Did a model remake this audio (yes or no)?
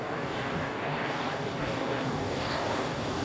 yes